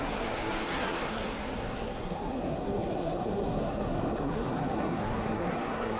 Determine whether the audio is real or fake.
fake